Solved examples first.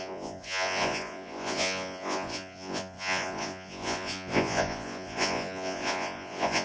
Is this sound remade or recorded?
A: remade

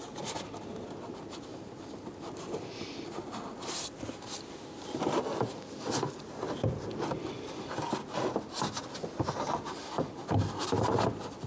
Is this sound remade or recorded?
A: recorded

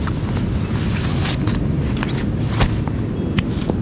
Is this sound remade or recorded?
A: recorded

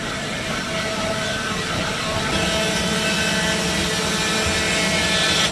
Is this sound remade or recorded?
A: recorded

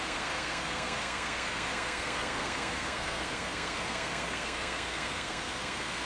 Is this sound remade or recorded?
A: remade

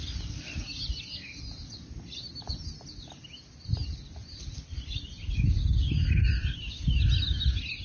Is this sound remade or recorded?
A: recorded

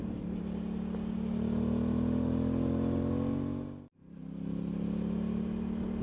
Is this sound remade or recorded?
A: recorded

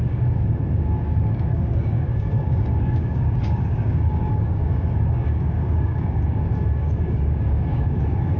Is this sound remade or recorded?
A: remade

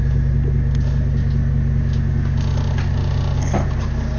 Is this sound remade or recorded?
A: recorded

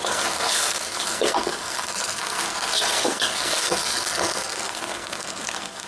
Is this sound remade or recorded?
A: remade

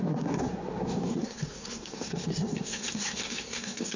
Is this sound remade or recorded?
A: remade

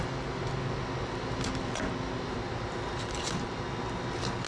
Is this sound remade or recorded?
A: recorded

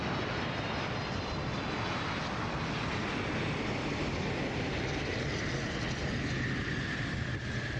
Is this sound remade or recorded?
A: recorded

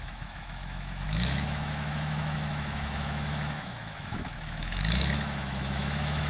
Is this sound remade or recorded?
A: remade